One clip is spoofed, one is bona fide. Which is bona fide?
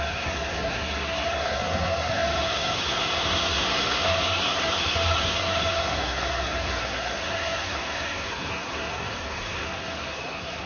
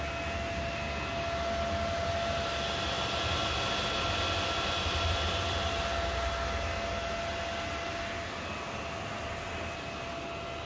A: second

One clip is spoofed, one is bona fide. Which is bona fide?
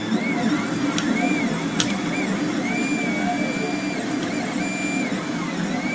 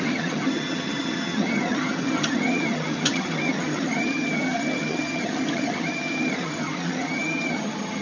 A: first